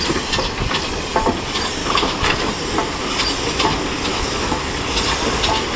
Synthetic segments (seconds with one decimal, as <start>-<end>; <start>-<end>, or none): 1.8-2.5; 4.1-4.7